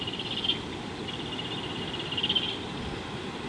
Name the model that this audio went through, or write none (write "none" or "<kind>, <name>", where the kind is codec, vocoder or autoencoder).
none